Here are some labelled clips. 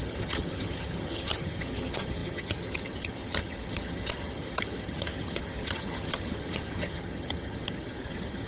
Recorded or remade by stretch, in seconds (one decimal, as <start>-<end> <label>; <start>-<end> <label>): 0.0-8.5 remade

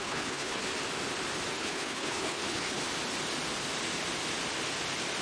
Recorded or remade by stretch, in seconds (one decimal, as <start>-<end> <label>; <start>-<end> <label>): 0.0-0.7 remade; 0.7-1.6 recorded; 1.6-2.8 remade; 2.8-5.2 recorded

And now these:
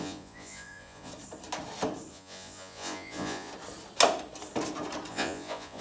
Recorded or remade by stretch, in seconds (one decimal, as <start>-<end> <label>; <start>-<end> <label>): 0.0-1.1 remade; 1.1-2.1 recorded; 2.1-3.5 remade; 3.5-5.1 recorded; 5.1-5.8 remade

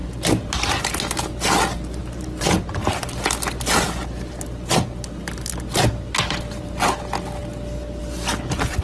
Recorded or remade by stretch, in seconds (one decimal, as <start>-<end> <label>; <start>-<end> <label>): 0.0-0.8 remade; 0.8-2.0 recorded; 2.0-2.6 remade; 2.6-8.8 recorded